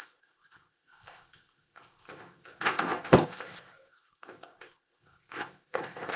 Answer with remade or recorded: remade